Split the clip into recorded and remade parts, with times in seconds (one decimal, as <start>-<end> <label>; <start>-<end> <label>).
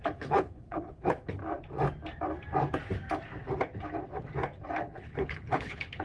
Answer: 0.0-1.4 remade; 1.4-4.8 recorded; 4.8-6.0 remade